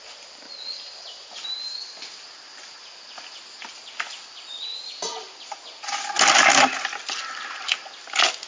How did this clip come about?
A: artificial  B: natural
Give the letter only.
B